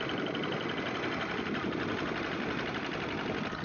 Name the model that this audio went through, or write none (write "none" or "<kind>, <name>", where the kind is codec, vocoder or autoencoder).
none